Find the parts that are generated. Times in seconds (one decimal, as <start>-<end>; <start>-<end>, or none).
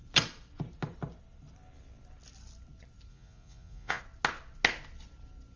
3.1-4.0